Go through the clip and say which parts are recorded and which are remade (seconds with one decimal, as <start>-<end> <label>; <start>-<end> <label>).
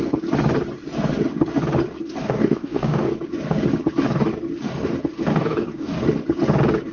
0.0-2.2 recorded; 2.2-3.1 remade; 3.1-5.3 recorded; 5.3-6.0 remade; 6.0-6.9 recorded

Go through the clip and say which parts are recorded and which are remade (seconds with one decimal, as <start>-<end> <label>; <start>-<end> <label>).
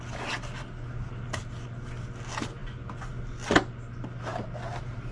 0.0-5.1 recorded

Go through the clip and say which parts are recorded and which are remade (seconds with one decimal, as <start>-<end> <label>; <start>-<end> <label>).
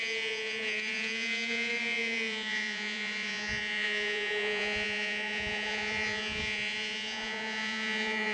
0.0-8.3 remade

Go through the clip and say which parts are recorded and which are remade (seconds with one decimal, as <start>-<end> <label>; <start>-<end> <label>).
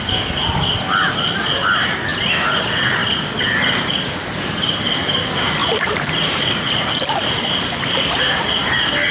0.0-5.6 recorded; 5.6-8.4 remade; 8.4-9.1 recorded